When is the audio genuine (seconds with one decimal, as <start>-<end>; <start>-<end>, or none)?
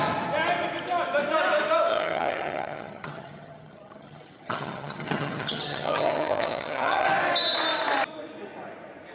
0.0-1.9; 7.1-9.1